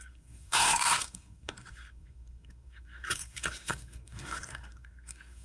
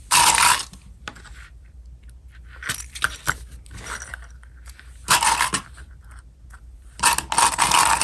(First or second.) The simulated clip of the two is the first